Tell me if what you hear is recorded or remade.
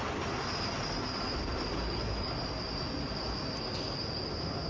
recorded